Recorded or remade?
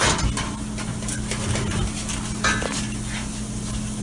recorded